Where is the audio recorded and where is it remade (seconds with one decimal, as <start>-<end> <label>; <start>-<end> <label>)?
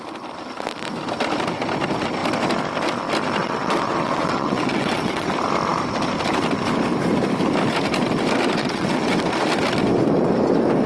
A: 0.0-3.4 recorded; 3.4-5.3 remade; 5.3-8.6 recorded; 8.6-9.2 remade; 9.2-10.9 recorded